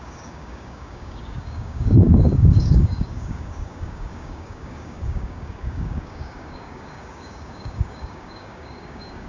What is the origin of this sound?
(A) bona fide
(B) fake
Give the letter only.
B